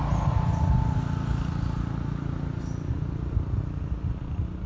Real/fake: real